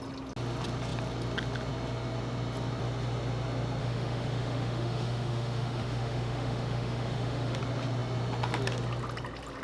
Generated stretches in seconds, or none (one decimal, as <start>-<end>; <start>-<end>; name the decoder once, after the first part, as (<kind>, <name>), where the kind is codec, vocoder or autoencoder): 3.8-7.6 (autoencoder, DAC-VAE)